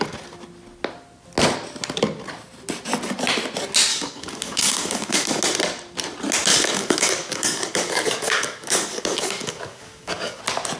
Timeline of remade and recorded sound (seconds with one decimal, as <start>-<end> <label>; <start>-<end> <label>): 0.0-3.9 recorded; 3.9-5.4 remade; 5.4-6.5 recorded; 6.5-10.4 remade; 10.4-10.8 recorded